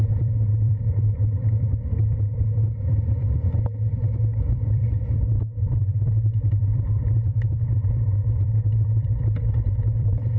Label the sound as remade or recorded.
remade